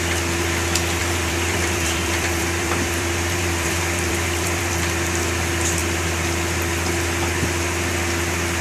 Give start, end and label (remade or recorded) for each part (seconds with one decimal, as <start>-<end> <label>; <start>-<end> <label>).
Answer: 0.0-1.0 recorded; 1.0-4.7 remade; 4.7-8.6 recorded